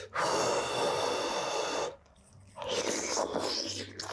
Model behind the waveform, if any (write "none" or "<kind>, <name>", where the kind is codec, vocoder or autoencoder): none